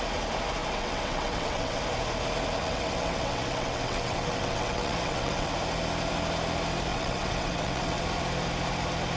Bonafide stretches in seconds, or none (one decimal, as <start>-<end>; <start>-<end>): 0.0-0.6; 1.8-2.6; 5.5-6.9; 8.0-9.2